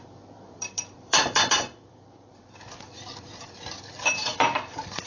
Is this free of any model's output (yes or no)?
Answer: no